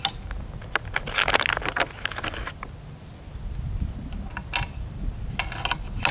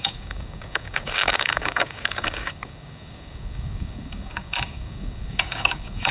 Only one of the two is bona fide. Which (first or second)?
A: first